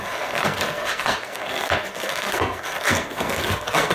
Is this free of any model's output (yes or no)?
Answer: no